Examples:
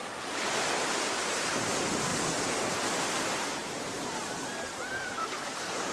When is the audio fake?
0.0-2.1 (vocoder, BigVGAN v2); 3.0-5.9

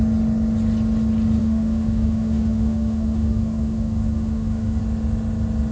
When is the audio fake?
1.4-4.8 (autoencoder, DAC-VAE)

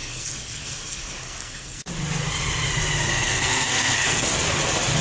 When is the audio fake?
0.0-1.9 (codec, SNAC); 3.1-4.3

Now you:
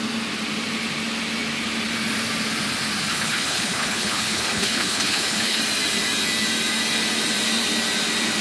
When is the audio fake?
3.1-5.6 (codec, HILCodec)

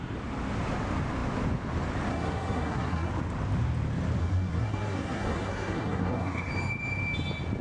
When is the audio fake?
2.1-3.1 (codec, SNAC); 4.2-6.5

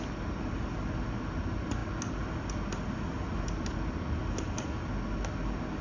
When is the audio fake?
none

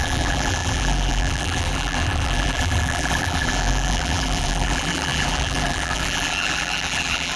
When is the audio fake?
0.0-7.4 (vocoder, BigVGAN v2)